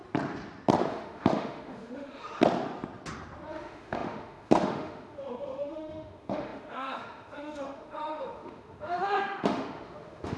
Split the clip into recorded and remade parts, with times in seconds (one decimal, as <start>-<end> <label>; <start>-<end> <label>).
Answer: 0.0-0.9 recorded; 0.9-2.4 remade; 2.4-3.5 recorded; 3.5-10.4 remade